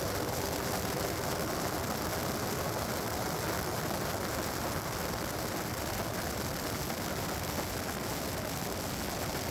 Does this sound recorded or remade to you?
recorded